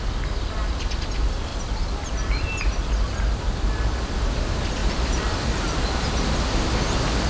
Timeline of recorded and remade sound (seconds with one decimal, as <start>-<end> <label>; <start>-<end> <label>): 0.0-1.5 recorded; 1.5-4.3 remade; 4.3-4.8 recorded; 4.8-5.9 remade; 5.9-7.3 recorded